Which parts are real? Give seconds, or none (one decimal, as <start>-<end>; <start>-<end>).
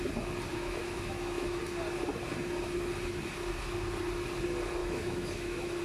0.0-0.5; 1.6-4.8